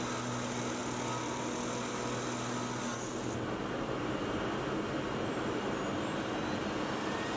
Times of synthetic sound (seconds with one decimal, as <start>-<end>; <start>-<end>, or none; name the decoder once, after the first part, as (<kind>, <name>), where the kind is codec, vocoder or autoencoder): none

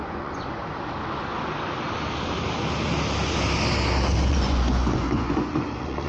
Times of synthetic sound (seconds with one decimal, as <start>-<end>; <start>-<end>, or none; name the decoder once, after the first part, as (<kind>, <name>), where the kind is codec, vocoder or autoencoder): 0.0-0.6 (vocoder, Vocos); 4.3-6.1

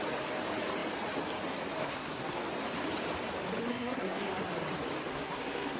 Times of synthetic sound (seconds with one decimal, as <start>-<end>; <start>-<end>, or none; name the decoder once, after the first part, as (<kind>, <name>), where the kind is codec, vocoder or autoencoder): 1.8-2.4 (codec, SNAC); 3.7-4.3; 5.1-5.8

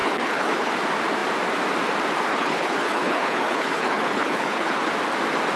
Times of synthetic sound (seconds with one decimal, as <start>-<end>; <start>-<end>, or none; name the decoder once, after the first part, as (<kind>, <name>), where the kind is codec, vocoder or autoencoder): 0.0-0.7 (codec, HILCodec); 2.3-4.9

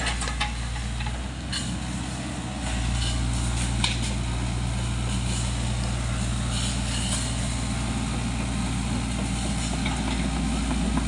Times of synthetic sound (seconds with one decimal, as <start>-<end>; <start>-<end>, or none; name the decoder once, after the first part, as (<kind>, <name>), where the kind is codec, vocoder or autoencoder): none

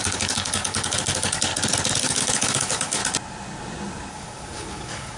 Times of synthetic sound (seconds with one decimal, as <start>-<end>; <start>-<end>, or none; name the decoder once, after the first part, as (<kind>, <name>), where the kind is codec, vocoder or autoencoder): 0.0-1.5 (codec, DAC); 2.0-3.0; 4.1-5.2

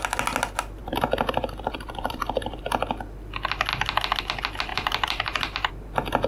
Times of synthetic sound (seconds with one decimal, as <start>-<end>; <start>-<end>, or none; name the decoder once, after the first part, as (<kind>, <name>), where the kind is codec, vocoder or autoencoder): 0.8-2.6 (vocoder, BigVGAN v2); 4.7-5.7